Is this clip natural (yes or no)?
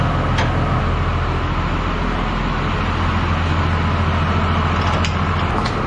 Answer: yes